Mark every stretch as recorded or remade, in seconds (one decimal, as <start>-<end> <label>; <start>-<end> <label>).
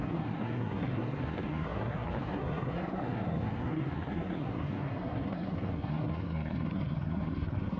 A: 0.0-7.8 remade